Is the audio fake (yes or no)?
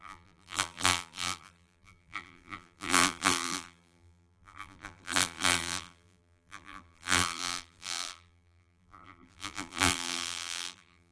yes